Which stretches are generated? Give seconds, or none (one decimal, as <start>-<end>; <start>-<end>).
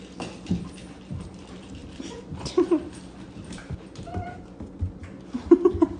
none